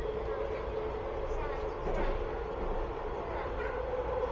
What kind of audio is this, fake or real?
real